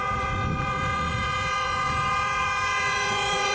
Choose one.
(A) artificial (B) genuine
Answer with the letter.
A